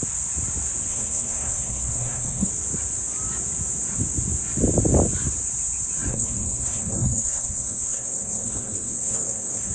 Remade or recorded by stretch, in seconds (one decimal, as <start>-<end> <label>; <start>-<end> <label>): 0.0-0.9 recorded; 0.9-2.5 remade; 2.5-6.1 recorded; 6.1-9.7 remade